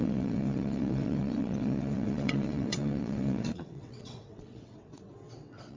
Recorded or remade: remade